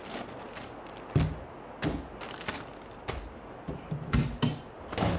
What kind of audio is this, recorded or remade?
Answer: recorded